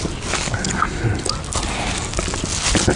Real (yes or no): yes